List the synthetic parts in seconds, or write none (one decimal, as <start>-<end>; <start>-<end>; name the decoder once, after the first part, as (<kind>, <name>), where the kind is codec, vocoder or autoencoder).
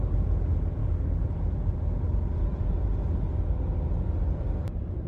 0.8-1.3 (codec, DAC)